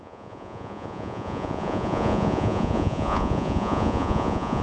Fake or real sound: fake